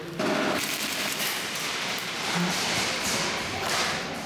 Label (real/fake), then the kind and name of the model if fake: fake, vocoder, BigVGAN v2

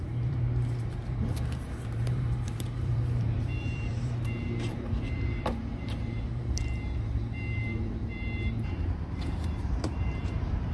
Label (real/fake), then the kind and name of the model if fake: fake, vocoder, BigVGAN v2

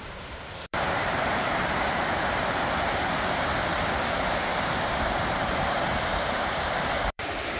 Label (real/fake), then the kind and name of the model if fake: fake, vocoder, BigVGAN v2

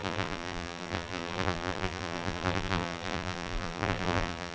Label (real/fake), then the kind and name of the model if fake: fake, vocoder, BigVGAN v2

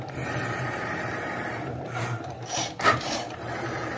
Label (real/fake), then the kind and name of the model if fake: fake, vocoder, BigVGAN v2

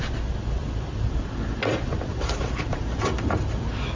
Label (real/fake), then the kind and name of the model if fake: fake, vocoder, BigVGAN v2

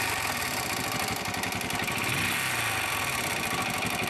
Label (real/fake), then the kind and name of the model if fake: real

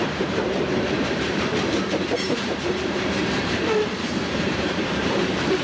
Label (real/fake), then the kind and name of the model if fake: fake, vocoder, BigVGAN v2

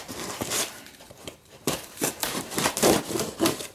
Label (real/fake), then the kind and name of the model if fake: fake, vocoder, BigVGAN v2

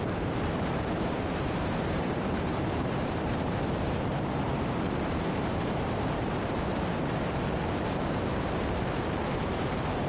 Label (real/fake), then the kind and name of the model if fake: fake, vocoder, BigVGAN v2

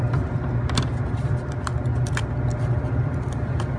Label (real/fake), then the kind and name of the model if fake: real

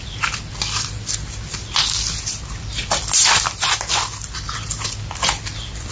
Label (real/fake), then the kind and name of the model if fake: fake, vocoder, BigVGAN v2